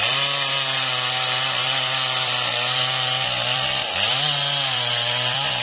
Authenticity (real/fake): fake